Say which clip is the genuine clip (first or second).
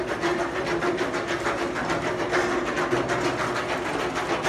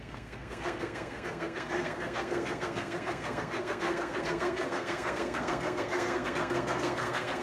first